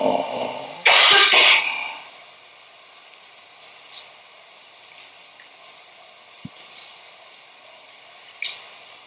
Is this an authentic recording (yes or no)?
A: yes